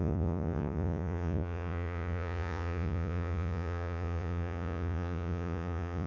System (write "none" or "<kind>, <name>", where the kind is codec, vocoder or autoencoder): vocoder, Vocos